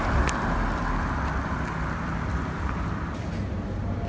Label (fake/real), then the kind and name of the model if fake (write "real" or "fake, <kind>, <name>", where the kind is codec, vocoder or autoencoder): real